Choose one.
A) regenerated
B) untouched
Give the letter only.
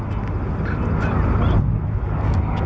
B